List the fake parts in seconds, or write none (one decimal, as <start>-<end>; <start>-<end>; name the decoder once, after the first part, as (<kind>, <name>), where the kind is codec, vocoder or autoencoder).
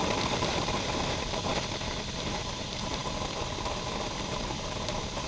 0.0-1.5 (vocoder, BigVGAN v2); 2.2-3.0; 4.3-5.3